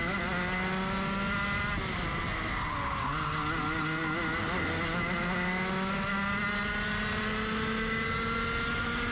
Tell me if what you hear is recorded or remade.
recorded